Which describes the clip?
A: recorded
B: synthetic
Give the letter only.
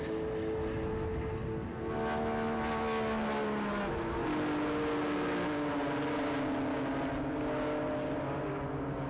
A